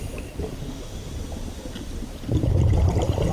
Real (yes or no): yes